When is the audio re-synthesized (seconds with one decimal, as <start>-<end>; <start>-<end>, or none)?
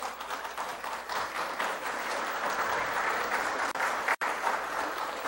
0.0-5.3